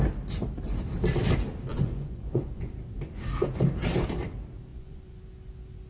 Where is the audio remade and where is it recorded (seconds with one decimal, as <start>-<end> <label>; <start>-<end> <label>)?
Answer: 0.0-1.7 recorded; 1.7-2.7 remade; 2.7-4.7 recorded; 4.7-5.2 remade; 5.2-5.9 recorded